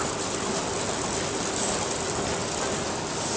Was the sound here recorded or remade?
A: recorded